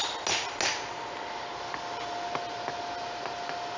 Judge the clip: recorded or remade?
recorded